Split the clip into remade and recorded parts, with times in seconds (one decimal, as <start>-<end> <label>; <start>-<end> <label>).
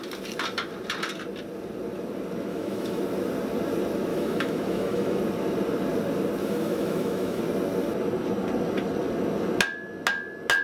0.0-2.5 recorded; 2.5-3.0 remade; 3.0-4.1 recorded; 4.1-5.2 remade; 5.2-6.4 recorded; 6.4-7.4 remade; 7.4-10.6 recorded